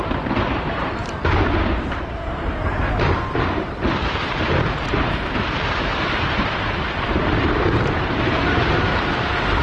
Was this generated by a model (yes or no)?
yes